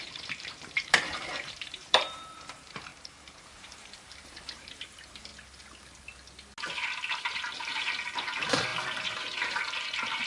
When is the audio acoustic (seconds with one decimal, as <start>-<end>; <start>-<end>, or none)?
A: 5.3-7.2